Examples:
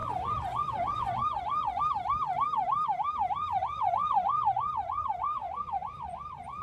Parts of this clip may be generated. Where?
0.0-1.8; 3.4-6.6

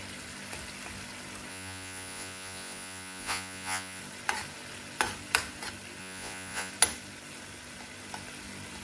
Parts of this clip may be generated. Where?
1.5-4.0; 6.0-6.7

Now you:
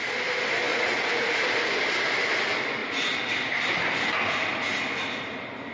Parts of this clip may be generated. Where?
0.7-1.4; 2.8-3.3